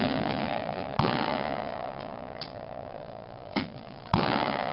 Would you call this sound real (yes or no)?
no